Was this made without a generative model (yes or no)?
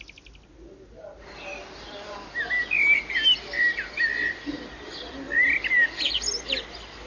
yes